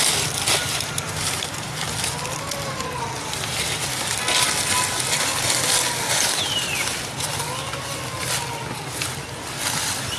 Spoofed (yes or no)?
no